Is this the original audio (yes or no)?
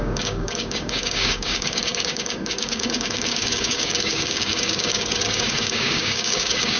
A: no